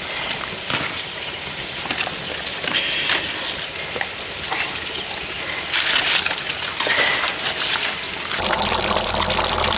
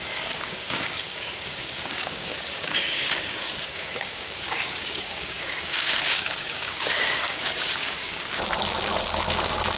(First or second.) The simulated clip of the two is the second